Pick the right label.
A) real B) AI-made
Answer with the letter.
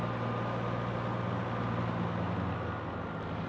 A